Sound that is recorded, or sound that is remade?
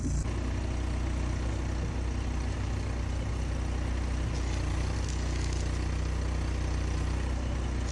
recorded